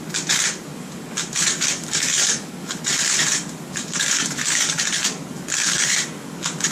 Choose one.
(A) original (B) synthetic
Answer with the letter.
B